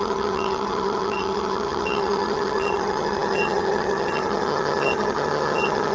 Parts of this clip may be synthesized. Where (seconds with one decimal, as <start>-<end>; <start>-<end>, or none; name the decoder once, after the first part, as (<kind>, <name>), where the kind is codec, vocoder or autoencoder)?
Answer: 0.0-5.9 (vocoder, HiFi-GAN)

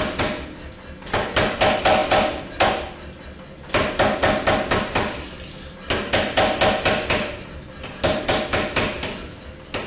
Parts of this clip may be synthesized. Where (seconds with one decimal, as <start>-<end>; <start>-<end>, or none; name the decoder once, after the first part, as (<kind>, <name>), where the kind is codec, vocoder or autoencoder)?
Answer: none

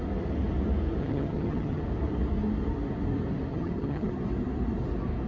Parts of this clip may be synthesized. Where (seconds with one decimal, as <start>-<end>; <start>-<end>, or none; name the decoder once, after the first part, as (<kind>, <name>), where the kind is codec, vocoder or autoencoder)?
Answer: 1.0-1.8 (vocoder, HiFi-GAN); 3.5-4.1

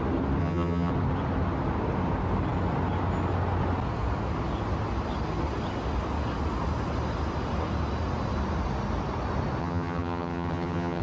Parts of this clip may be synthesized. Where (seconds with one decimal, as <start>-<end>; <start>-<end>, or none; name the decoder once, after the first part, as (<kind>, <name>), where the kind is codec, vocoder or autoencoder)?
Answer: 0.4-0.9 (vocoder, HiFi-GAN); 9.6-11.0

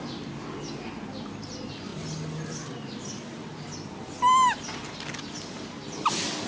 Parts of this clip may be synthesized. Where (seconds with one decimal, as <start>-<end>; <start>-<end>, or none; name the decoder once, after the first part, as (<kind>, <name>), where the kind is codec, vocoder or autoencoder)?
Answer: none

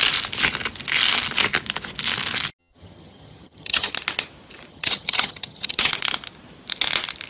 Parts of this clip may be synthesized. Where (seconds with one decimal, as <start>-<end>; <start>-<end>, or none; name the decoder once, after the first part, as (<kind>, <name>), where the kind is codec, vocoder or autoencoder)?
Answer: 2.6-3.9 (vocoder, HiFi-GAN); 4.7-5.9